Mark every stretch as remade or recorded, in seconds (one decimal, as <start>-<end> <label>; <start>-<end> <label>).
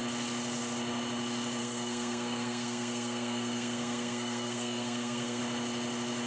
0.0-1.6 recorded; 1.6-5.4 remade; 5.4-6.3 recorded